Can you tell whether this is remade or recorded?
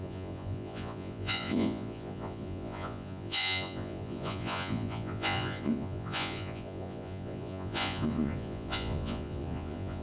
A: remade